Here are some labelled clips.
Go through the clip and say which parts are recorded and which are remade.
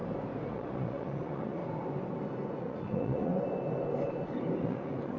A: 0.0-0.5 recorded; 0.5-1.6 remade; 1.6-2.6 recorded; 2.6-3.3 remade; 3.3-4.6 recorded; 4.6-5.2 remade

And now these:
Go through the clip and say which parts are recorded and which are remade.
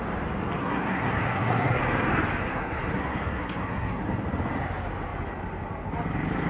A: 0.0-0.6 recorded; 0.6-1.8 remade; 1.8-2.4 recorded; 2.4-4.0 remade; 4.0-6.5 recorded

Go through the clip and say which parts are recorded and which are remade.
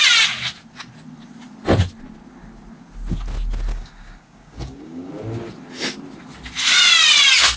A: 0.0-3.7 recorded; 3.7-5.1 remade; 5.1-7.6 recorded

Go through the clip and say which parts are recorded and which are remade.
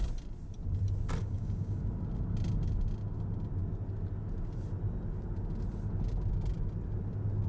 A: 0.0-1.2 recorded; 1.2-1.8 remade; 1.8-7.5 recorded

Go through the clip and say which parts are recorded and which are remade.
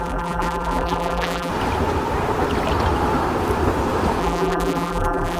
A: 0.0-1.5 remade; 1.5-4.2 recorded; 4.2-5.4 remade